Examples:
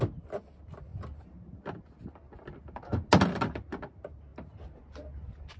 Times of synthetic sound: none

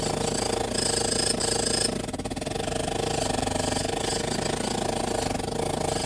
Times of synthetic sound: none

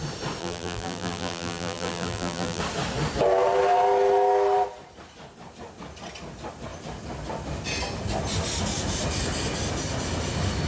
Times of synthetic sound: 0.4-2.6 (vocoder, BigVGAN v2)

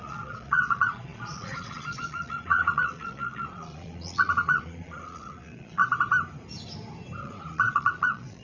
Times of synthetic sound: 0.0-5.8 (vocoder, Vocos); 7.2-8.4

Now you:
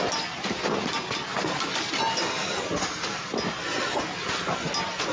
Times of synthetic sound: none